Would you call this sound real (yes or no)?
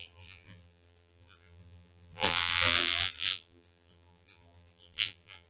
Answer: no